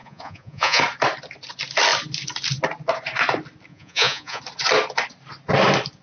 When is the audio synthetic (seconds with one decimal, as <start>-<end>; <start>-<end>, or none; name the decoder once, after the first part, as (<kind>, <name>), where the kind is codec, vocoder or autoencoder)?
0.0-0.8 (vocoder, Vocos); 3.7-4.4